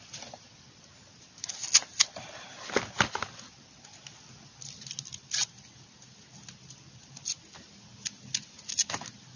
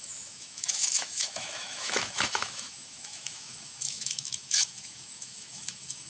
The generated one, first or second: second